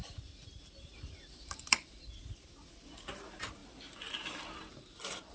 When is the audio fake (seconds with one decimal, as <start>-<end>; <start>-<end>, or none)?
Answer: 0.9-2.0

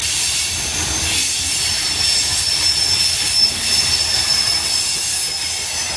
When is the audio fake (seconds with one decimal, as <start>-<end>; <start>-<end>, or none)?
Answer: 0.0-0.7; 1.3-2.3; 3.4-4.5